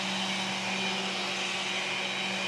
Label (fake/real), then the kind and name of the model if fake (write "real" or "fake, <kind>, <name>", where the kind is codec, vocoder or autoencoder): real